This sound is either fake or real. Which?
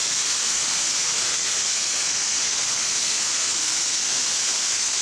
fake